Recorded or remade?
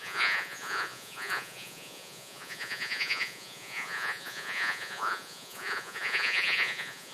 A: remade